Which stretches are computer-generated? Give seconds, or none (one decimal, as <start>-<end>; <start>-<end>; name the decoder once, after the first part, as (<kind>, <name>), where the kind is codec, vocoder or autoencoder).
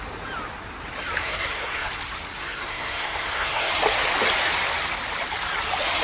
1.2-1.9 (codec, SNAC); 2.4-3.7